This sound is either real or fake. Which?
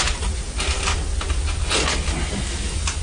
real